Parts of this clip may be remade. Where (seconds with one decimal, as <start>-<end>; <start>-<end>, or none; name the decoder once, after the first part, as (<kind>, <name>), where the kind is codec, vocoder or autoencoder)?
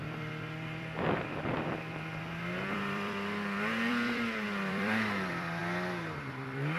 0.0-6.8 (vocoder, BigVGAN v2)